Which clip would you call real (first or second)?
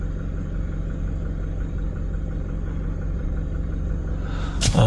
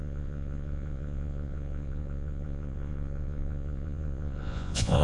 first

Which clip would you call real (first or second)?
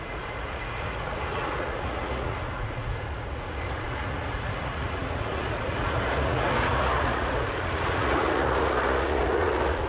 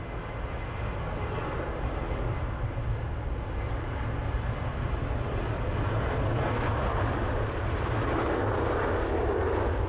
second